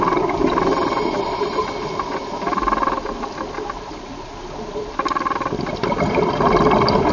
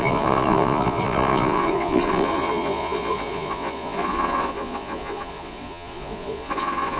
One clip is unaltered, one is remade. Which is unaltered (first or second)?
first